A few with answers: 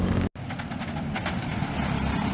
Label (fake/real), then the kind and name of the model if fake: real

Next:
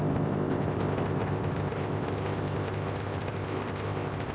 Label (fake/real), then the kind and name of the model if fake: fake, codec, ZipCodec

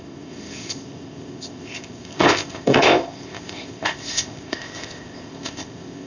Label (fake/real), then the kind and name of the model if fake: fake, codec, ZipCodec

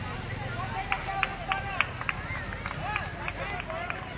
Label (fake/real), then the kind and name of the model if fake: real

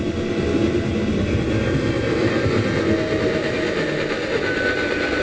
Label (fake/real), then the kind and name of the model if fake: real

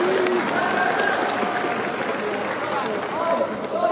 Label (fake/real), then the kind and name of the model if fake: real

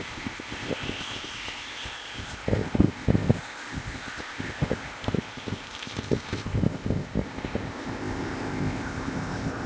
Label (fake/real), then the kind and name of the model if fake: fake, codec, ZipCodec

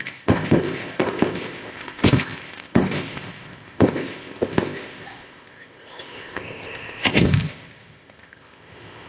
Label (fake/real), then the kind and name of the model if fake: fake, codec, ZipCodec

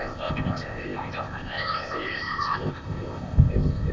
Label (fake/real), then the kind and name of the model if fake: fake, codec, ZipCodec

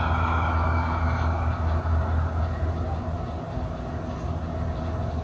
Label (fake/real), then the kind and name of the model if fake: real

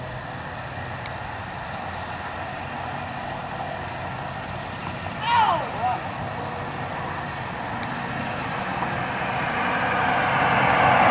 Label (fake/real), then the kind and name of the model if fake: real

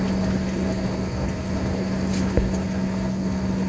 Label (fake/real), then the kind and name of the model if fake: real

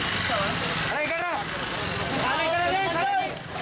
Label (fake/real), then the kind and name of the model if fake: real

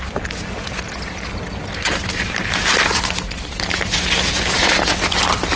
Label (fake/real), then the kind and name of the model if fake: real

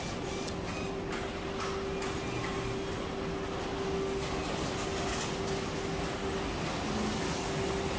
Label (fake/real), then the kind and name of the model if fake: real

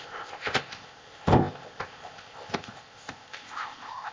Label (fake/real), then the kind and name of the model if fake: fake, codec, ZipCodec